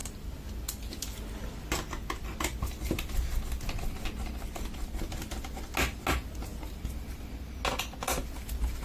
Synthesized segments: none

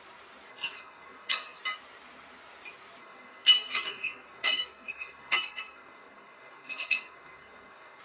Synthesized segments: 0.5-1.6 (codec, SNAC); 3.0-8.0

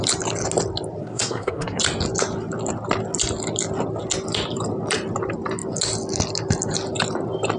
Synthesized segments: 1.0-1.8 (codec, SNAC)